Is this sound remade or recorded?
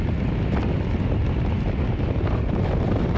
recorded